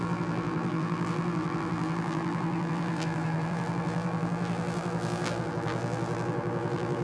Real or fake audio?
fake